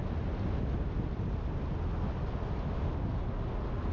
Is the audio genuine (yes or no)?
yes